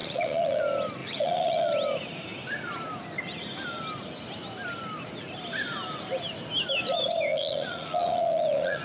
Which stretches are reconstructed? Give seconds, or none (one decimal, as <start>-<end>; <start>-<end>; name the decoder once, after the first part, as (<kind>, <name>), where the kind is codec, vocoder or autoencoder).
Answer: 0.0-0.6 (vocoder, Vocos); 1.0-1.7; 7.3-8.8